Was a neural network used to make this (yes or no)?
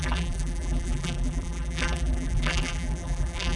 yes